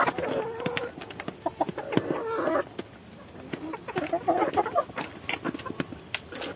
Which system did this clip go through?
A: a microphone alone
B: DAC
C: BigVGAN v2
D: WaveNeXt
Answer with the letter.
A